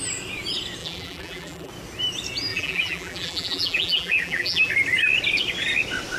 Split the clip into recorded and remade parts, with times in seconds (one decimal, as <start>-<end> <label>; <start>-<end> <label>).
0.0-0.8 recorded; 0.8-1.7 remade; 1.7-2.5 recorded; 2.5-4.7 remade; 4.7-6.2 recorded